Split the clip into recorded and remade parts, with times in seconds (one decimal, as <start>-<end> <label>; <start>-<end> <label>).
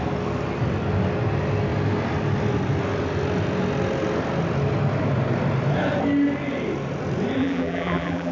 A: 0.0-7.4 recorded; 7.4-8.3 remade